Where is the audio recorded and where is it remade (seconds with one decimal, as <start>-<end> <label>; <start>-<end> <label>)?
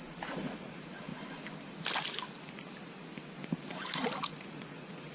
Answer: 0.0-1.1 remade; 1.1-4.2 recorded; 4.2-5.1 remade